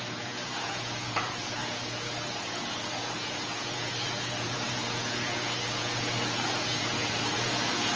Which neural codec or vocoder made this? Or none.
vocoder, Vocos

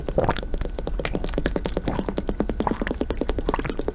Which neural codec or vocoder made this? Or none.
none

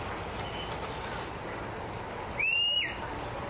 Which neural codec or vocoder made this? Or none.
none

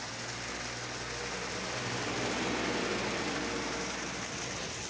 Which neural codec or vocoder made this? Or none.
none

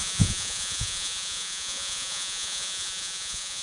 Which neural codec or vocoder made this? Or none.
vocoder, Vocos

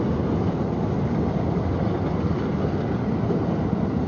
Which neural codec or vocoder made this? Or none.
none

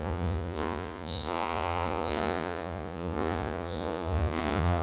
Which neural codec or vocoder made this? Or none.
vocoder, Vocos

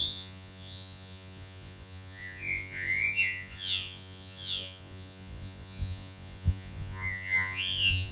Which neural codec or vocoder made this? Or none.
vocoder, Vocos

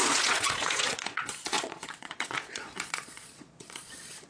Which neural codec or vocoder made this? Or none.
vocoder, Vocos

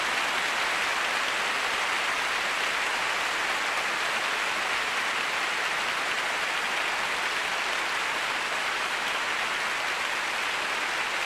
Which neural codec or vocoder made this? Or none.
none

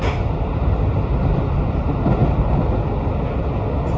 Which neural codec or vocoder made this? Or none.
none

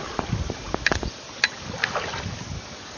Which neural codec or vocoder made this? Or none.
none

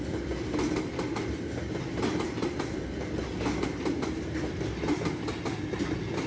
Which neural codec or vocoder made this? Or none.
none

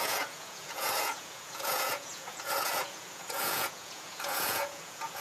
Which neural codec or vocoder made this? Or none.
vocoder, Vocos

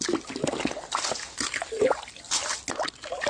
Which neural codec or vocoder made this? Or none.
none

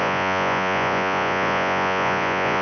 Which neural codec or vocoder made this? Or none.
vocoder, Vocos